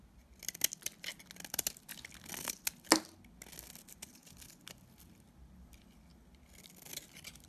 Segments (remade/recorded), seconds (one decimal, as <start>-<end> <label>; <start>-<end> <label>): 0.0-7.5 recorded